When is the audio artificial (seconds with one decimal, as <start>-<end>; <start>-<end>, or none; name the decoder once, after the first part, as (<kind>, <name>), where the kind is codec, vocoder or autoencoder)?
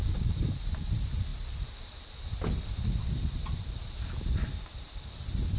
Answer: 0.0-0.5 (codec, DAC)